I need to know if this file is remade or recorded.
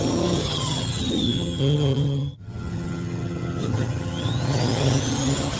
remade